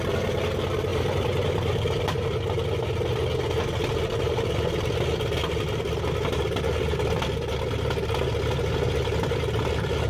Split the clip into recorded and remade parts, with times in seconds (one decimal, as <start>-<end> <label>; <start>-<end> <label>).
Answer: 0.0-0.9 recorded; 0.9-2.0 remade; 2.0-10.1 recorded